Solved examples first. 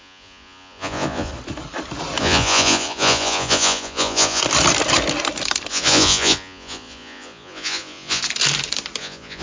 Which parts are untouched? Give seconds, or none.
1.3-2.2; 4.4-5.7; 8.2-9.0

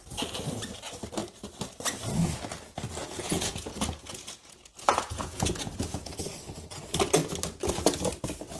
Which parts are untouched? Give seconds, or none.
0.0-3.0; 6.2-8.6

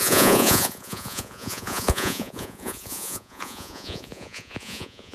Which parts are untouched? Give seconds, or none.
none

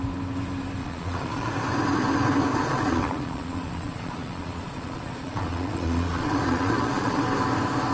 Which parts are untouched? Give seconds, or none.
0.0-0.8; 1.5-2.5; 7.2-7.9